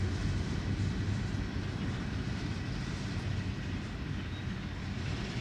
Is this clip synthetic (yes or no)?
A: no